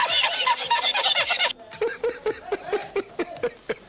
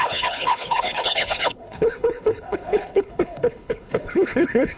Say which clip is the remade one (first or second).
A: second